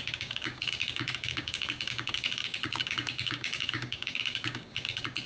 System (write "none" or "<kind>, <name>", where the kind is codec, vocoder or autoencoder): codec, DAC